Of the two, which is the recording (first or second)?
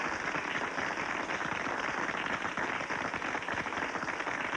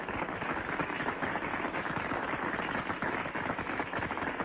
first